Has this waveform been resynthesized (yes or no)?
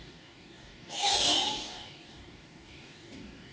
yes